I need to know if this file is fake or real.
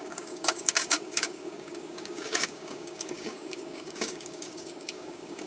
fake